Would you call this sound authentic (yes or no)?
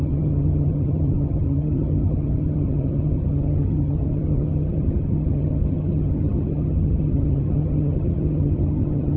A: no